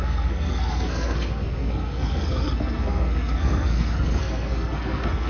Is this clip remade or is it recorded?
remade